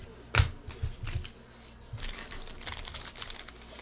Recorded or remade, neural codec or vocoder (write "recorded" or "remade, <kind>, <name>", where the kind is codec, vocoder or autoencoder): recorded